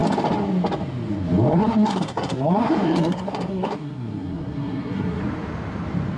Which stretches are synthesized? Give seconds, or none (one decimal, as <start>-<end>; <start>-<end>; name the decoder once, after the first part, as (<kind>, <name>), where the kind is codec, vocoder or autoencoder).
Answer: 1.5-5.2 (codec, SNAC)